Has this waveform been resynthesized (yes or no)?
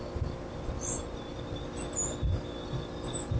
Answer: no